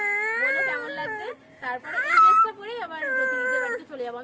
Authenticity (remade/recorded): recorded